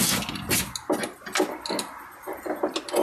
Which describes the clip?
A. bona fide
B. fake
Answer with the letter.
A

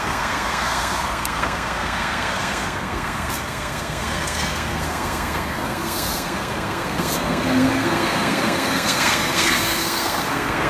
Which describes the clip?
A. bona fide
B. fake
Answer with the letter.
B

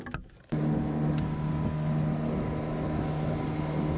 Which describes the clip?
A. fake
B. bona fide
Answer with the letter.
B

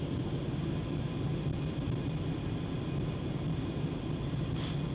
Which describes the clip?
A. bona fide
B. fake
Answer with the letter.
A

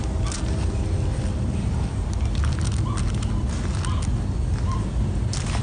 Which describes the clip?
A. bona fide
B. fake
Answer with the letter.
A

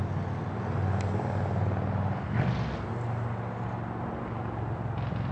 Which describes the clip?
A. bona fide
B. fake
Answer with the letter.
A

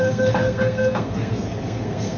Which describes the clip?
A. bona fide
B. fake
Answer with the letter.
B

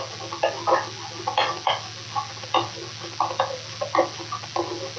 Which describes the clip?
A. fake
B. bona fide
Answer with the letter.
B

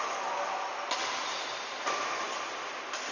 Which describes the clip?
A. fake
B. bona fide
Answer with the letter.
B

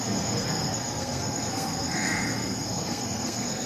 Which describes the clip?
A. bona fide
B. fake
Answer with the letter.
B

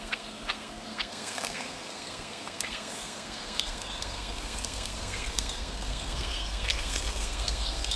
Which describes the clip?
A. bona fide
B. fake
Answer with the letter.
B